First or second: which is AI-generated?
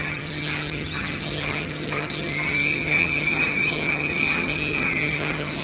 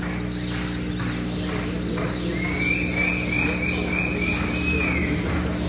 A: first